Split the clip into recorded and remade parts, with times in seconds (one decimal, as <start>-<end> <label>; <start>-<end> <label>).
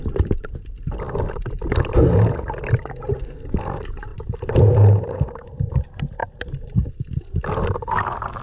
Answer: 0.0-4.1 recorded; 4.1-5.7 remade; 5.7-8.4 recorded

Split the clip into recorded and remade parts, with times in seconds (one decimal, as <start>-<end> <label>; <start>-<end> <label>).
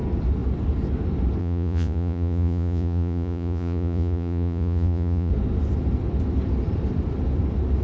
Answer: 0.0-1.4 recorded; 1.4-5.3 remade; 5.3-7.8 recorded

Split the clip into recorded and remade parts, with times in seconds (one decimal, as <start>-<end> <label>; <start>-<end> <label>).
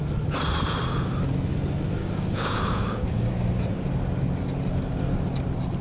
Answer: 0.0-2.0 recorded; 2.0-3.3 remade; 3.3-5.8 recorded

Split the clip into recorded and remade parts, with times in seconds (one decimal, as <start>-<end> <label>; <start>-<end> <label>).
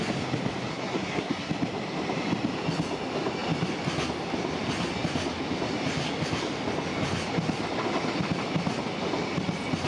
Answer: 0.0-0.7 recorded; 0.7-1.5 remade; 1.5-9.9 recorded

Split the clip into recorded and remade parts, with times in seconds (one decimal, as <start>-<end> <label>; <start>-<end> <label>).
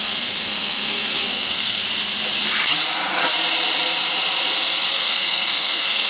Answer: 0.0-1.8 remade; 1.8-4.9 recorded; 4.9-6.1 remade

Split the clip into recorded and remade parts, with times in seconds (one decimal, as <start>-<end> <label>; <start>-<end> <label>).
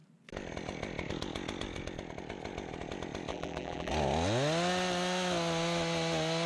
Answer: 0.0-3.3 recorded; 3.3-3.9 remade; 3.9-6.5 recorded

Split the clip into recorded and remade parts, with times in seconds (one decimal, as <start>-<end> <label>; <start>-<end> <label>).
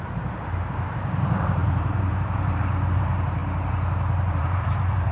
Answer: 0.0-3.4 remade; 3.4-4.3 recorded; 4.3-5.1 remade